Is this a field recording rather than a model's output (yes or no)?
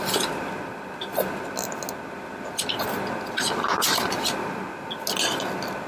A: yes